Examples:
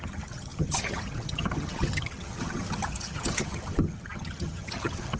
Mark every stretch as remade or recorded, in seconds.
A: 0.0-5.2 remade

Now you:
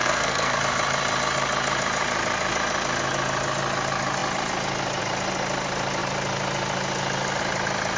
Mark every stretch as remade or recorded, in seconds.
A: 0.0-0.6 remade; 0.6-8.0 recorded

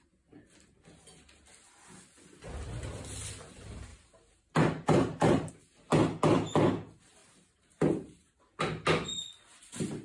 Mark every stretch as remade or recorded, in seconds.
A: 0.0-3.9 recorded; 3.9-5.5 remade; 5.5-7.2 recorded; 7.2-8.4 remade; 8.4-10.0 recorded

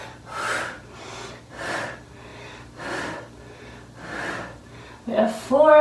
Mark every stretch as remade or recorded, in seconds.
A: 0.0-5.8 recorded